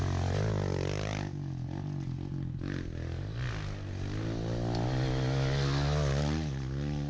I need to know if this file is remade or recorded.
recorded